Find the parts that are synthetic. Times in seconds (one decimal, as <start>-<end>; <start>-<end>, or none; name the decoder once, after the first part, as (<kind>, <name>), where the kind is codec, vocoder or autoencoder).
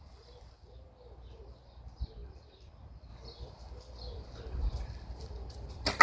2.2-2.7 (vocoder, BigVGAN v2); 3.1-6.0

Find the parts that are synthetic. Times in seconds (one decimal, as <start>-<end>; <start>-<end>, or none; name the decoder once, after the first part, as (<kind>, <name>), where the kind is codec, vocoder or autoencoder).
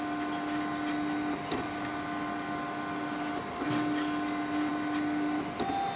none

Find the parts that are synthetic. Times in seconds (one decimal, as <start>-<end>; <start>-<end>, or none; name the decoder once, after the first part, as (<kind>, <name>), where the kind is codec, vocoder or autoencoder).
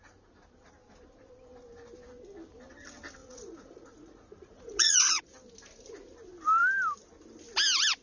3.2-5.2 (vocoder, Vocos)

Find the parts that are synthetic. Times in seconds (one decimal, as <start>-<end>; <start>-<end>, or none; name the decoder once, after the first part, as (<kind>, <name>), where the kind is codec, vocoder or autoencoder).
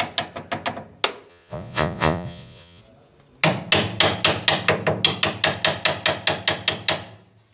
1.3-2.8 (vocoder, Vocos)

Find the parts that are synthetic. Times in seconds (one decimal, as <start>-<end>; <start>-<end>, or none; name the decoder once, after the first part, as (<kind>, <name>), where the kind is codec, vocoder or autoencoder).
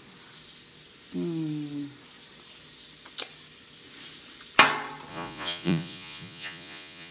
5.1-7.1 (vocoder, Vocos)